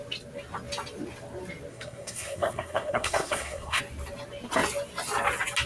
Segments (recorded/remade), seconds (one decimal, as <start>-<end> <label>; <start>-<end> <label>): 0.0-1.7 recorded; 1.7-3.8 remade; 3.8-5.7 recorded